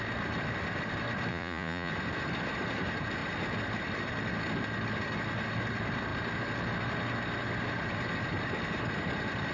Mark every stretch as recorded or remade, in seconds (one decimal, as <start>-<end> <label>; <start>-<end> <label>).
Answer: 0.0-1.3 recorded; 1.3-1.9 remade; 1.9-9.5 recorded